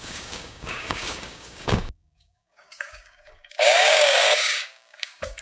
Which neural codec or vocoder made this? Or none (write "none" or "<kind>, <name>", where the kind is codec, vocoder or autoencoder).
codec, DAC